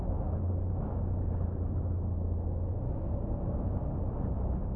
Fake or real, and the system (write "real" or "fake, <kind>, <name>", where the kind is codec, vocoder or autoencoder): real